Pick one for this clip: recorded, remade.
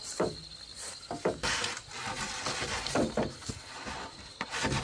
recorded